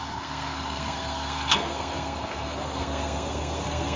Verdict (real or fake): fake